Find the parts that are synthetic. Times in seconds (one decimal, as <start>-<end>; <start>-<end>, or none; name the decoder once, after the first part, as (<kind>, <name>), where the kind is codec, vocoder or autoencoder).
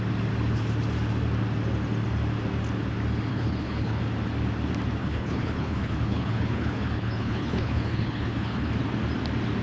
3.3-4.0 (codec, HILCodec); 5.0-8.7